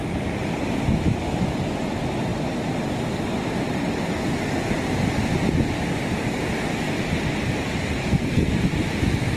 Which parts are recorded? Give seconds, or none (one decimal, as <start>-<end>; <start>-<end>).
0.0-8.0; 8.5-9.4